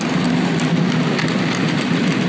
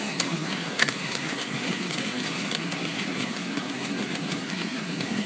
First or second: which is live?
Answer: first